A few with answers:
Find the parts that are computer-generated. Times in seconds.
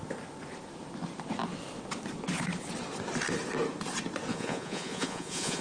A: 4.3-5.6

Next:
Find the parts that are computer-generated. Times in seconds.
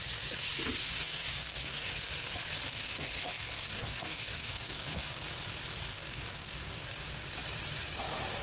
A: 0.8-1.9; 2.7-5.2; 5.9-6.8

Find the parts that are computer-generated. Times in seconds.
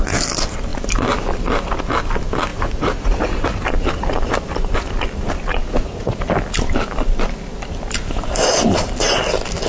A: 2.5-3.6; 5.5-6.2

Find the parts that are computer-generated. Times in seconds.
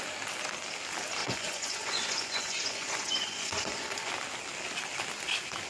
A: 1.2-4.1